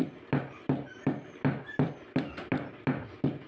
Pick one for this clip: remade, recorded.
recorded